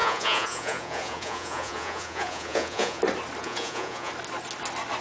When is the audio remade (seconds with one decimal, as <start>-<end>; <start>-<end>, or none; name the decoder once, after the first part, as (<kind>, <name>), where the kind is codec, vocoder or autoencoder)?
0.0-3.0 (vocoder, Vocos); 3.4-4.1